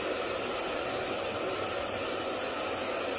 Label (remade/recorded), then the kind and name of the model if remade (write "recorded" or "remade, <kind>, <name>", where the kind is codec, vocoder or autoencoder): recorded